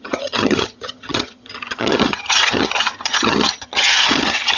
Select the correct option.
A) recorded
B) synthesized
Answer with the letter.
B